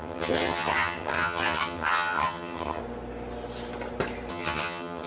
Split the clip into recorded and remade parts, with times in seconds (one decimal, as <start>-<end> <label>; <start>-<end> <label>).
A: 0.0-2.8 remade; 2.8-4.3 recorded; 4.3-5.1 remade